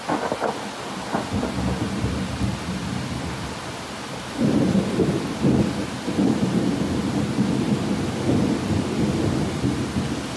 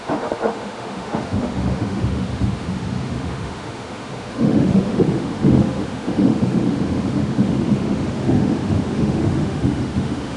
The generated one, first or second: second